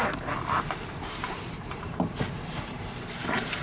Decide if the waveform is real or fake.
fake